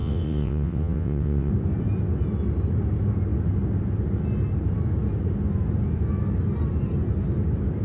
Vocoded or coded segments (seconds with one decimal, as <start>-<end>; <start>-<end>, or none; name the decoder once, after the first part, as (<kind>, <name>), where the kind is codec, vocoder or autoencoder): 0.0-1.5 (vocoder, WaveNeXt)